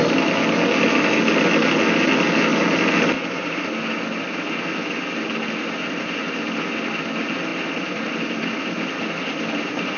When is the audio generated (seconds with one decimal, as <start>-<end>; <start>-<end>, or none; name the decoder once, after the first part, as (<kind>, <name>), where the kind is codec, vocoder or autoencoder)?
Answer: 7.5-8.5 (vocoder, BigVGAN v2)